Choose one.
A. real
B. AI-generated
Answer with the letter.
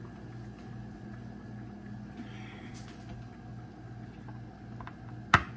A